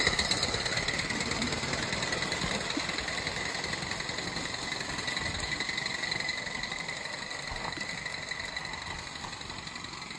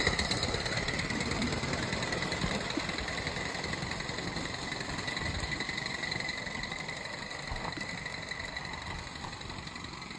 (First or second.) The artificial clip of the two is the second